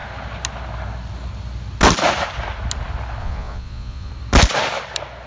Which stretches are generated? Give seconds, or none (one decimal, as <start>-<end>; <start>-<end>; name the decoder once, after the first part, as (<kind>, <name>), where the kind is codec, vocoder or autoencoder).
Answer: 3.2-4.1 (vocoder, Vocos)